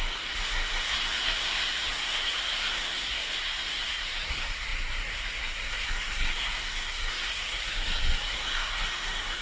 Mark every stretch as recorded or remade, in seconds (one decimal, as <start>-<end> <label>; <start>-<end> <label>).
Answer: 0.0-9.4 remade

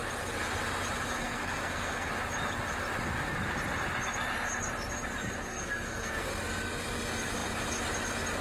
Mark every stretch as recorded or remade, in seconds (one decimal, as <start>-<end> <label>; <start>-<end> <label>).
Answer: 0.0-1.2 recorded; 1.2-2.1 remade; 2.1-5.5 recorded; 5.5-6.3 remade; 6.3-8.4 recorded

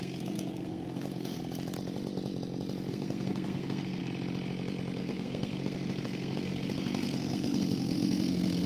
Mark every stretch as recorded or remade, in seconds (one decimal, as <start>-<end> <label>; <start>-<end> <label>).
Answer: 0.0-1.4 remade; 1.4-2.9 recorded; 2.9-4.0 remade; 4.0-5.0 recorded; 5.0-8.7 remade